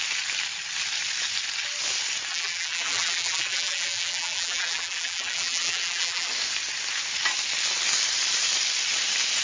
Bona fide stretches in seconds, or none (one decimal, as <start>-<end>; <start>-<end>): 0.0-2.3; 6.3-9.4